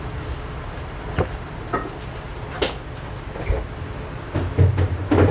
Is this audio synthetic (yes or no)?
no